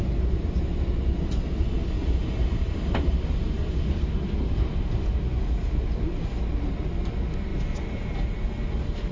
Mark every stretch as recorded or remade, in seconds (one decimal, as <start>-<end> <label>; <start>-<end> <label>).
0.0-7.5 recorded; 7.5-8.2 remade; 8.2-9.1 recorded